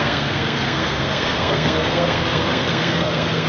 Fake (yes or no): yes